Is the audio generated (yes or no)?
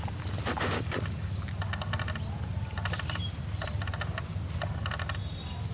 no